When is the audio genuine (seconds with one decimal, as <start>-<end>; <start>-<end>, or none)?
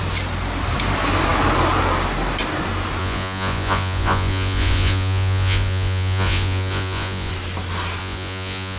0.0-3.0; 7.3-8.0